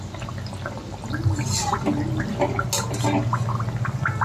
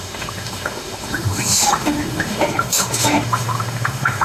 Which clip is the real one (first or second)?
first